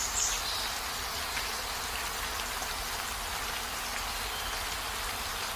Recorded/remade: recorded